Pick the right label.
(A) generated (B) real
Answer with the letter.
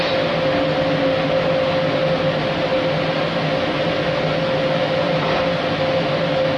B